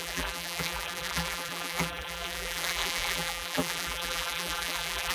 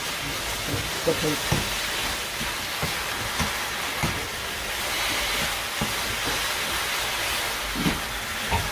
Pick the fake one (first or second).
first